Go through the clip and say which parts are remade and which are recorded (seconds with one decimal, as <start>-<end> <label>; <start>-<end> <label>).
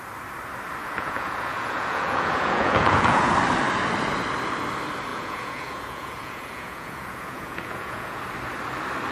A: 0.0-0.8 recorded; 0.8-3.3 remade; 3.3-5.1 recorded; 5.1-8.2 remade; 8.2-9.1 recorded